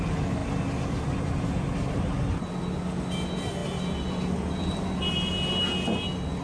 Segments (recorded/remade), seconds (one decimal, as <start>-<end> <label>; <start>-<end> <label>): 0.0-6.4 recorded